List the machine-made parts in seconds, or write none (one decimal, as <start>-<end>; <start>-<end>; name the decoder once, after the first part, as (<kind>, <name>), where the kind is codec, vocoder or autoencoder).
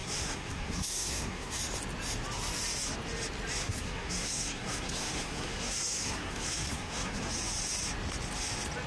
0.0-1.6 (codec, SNAC); 3.6-7.3